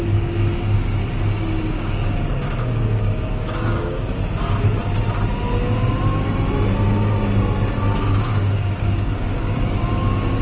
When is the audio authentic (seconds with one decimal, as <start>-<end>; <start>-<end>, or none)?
1.0-1.7; 4.2-8.2